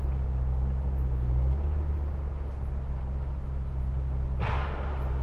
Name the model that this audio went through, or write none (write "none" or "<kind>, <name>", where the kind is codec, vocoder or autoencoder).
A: none